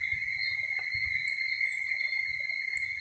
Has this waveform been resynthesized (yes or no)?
no